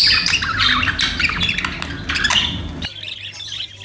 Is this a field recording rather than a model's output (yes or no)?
yes